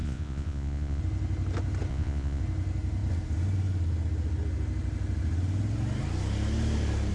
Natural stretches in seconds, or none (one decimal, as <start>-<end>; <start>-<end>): 1.0-1.9; 2.4-7.1